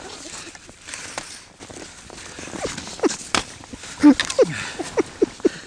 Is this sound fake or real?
real